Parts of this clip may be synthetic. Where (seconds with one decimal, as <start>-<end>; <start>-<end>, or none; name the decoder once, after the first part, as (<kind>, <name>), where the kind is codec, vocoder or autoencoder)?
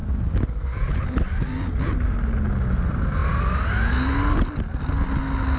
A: none